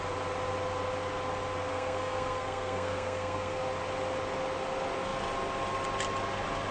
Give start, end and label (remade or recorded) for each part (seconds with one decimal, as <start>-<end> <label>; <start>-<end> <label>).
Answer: 0.0-1.7 recorded; 1.7-3.6 remade; 3.6-6.7 recorded